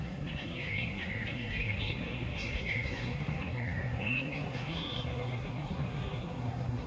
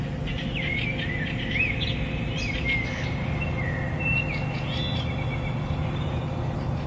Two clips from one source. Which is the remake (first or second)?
first